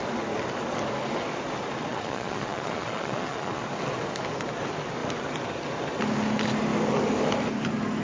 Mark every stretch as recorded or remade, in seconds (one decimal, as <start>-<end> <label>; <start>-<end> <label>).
0.0-1.9 recorded; 1.9-3.6 remade; 3.6-8.0 recorded